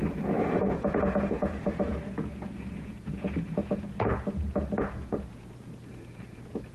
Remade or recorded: remade